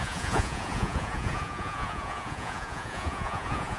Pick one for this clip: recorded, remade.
remade